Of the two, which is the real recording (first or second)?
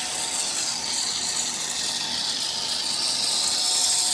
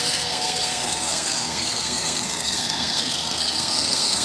first